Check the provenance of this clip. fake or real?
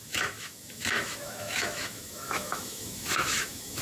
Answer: fake